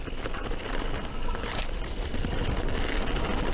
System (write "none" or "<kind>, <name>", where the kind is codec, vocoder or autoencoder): none